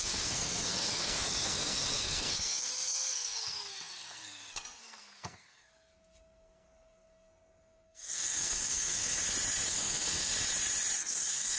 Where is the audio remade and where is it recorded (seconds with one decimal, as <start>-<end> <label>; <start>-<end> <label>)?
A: 0.0-9.2 remade; 9.2-9.7 recorded; 9.7-10.3 remade; 10.3-11.0 recorded; 11.0-11.6 remade